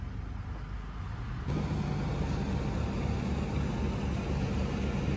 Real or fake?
real